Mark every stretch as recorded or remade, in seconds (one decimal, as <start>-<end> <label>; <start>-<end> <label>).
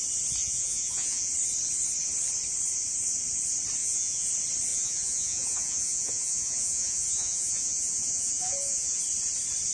0.0-0.4 recorded; 0.4-1.3 remade; 1.3-3.8 recorded; 3.8-4.3 remade; 4.3-4.7 recorded; 4.7-9.0 remade; 9.0-9.7 recorded